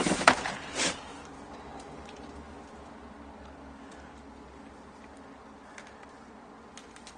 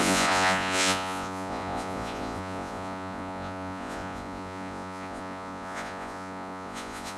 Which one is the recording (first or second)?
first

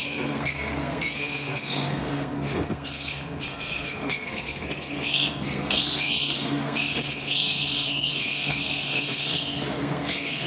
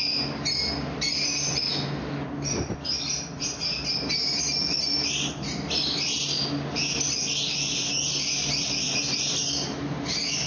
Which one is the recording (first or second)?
second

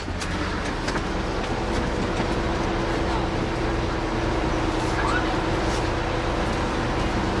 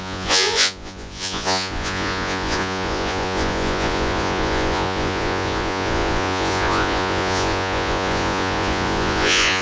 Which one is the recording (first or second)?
first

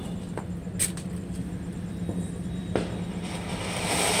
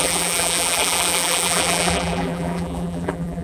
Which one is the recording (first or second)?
first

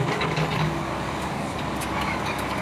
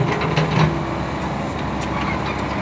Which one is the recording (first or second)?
second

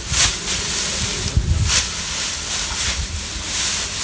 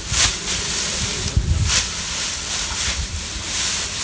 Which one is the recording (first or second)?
first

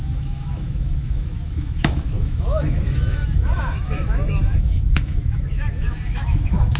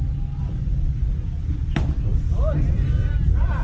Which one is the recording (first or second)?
second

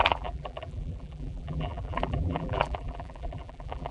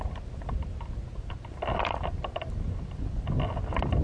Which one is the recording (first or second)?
second